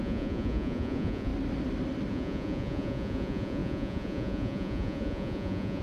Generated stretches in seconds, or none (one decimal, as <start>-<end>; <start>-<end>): 0.0-1.3; 2.1-5.8